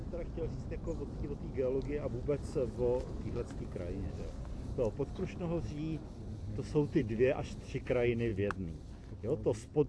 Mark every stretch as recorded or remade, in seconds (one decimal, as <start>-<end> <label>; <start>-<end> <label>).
0.0-9.9 recorded